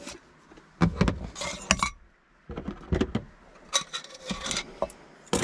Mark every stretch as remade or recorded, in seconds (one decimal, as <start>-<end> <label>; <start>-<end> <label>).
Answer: 0.0-5.4 recorded